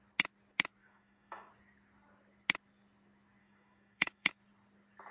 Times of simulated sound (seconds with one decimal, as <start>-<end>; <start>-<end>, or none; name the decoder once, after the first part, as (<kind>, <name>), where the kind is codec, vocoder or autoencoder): 0.8-1.5 (autoencoder, DAC-VAE); 3.4-4.3